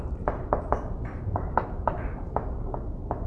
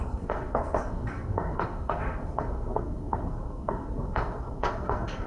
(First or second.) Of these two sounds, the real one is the first